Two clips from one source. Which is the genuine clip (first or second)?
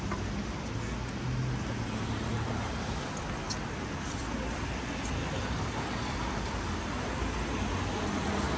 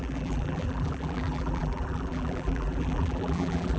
first